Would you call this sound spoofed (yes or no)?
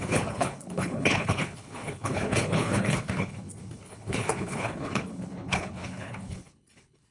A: yes